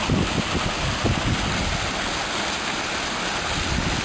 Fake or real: real